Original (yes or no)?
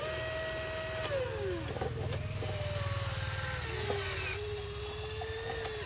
yes